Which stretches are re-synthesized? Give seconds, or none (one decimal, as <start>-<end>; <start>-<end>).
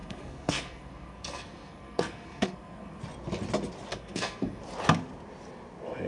0.0-3.0; 3.9-4.6